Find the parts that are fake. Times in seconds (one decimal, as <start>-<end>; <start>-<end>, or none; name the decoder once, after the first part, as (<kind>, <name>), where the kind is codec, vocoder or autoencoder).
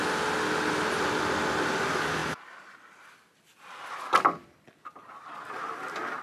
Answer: 0.7-2.2 (vocoder, BigVGAN v2); 3.1-6.2